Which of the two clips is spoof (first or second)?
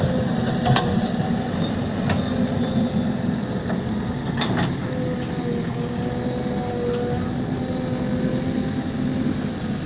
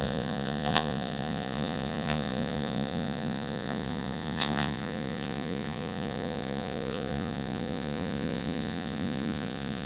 second